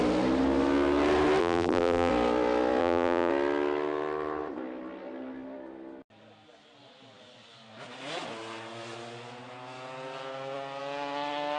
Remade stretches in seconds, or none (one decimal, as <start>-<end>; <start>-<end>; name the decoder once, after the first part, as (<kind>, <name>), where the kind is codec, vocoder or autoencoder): 1.4-2.1 (vocoder, BigVGAN v2); 2.8-3.3